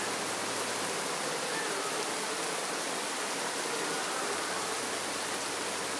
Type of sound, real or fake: real